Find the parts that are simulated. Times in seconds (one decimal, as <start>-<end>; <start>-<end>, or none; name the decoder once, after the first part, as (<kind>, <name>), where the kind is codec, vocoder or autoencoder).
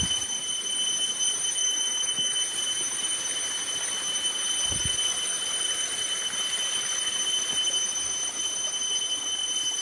1.6-2.4 (autoencoder, DAC-VAE)